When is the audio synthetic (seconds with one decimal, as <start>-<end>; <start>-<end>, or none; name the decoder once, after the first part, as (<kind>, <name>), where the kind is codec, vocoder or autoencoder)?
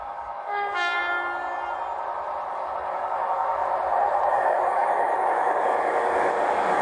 0.0-1.0 (codec, DAC); 2.5-3.6; 4.3-6.8